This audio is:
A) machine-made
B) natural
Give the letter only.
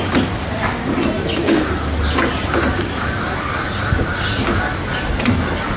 B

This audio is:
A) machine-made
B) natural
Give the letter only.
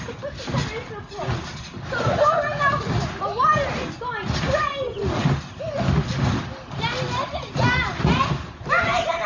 B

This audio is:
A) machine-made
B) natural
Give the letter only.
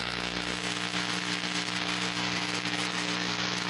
A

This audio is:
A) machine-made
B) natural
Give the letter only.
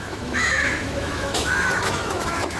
A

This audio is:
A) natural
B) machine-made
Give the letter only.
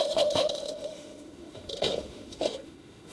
B